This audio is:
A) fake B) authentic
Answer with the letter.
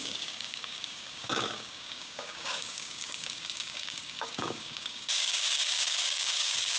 A